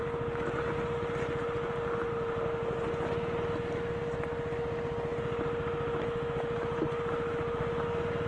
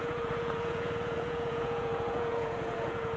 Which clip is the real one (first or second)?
first